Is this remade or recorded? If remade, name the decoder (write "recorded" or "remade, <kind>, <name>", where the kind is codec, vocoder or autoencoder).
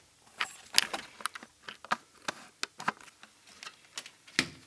recorded